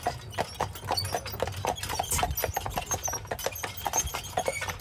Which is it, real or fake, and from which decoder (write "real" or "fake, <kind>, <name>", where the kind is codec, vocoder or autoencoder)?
real